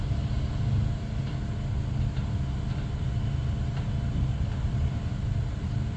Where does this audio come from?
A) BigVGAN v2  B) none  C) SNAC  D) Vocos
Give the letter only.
B